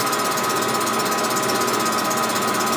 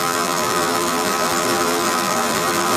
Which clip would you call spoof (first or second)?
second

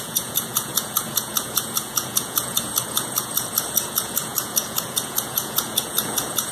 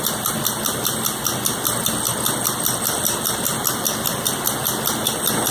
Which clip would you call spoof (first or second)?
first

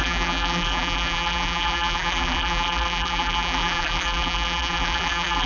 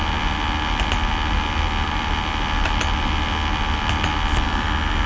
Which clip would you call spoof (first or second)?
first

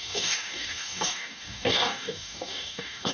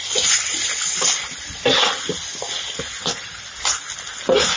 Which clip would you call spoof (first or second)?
first